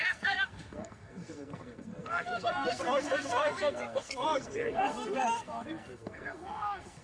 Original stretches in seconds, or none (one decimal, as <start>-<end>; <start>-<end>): none